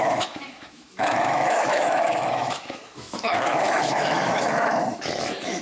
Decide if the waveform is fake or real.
fake